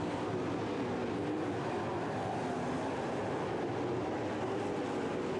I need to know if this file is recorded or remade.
recorded